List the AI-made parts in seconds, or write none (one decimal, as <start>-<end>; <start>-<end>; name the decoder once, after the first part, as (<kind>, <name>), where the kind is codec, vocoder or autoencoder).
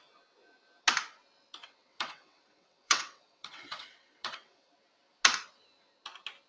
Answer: 1.6-4.7 (vocoder, WaveNeXt)